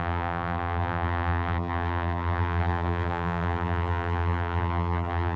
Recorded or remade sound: remade